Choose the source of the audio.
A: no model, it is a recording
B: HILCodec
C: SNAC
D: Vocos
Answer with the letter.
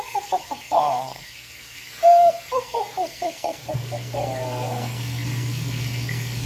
C